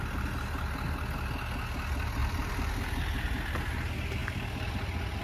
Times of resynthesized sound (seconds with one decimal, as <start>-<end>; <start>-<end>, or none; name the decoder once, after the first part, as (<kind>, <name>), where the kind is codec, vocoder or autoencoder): 2.2-3.0 (vocoder, BigVGAN v2)